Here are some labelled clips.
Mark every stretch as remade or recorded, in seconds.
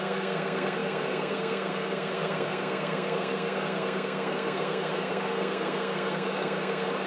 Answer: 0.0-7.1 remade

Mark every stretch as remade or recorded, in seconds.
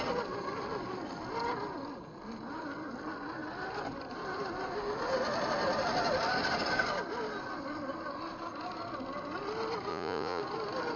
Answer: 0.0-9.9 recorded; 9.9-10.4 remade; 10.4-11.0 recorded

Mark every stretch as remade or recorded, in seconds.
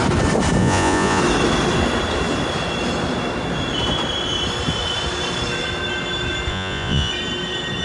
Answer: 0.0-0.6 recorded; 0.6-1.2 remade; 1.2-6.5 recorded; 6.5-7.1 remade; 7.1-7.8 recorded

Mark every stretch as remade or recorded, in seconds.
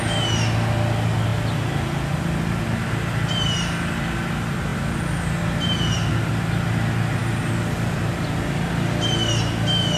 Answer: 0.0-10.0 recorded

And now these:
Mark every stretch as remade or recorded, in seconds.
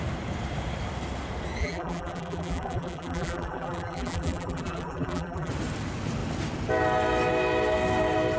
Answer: 0.0-1.6 recorded; 1.6-5.5 remade; 5.5-8.4 recorded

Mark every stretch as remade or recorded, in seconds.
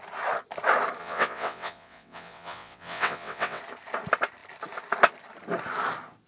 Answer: 0.0-1.0 recorded; 1.0-3.6 remade; 3.6-6.3 recorded